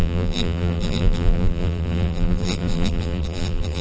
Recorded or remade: remade